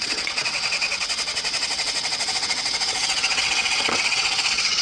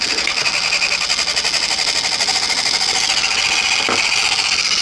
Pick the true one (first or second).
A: second